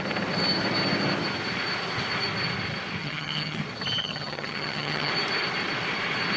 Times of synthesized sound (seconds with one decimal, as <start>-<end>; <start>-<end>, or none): 3.0-3.6; 4.0-5.1